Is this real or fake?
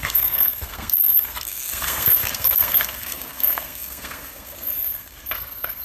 fake